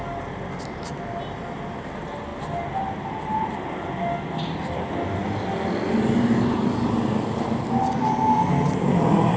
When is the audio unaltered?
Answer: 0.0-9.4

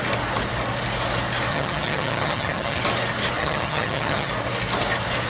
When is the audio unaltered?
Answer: 0.0-1.5; 2.8-3.4; 4.3-5.3

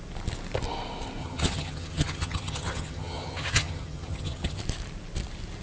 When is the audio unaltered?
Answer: 0.0-1.2; 4.6-5.6